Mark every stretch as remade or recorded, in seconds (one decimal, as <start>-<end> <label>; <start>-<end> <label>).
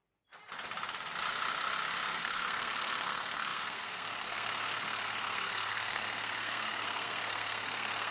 0.0-2.2 recorded; 2.2-8.1 remade